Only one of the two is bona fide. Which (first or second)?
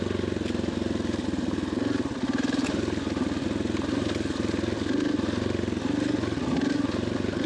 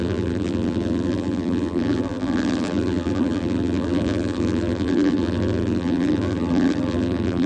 first